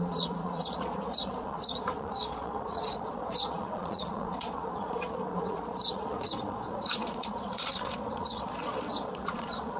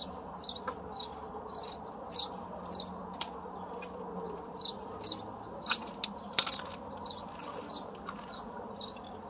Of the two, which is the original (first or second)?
second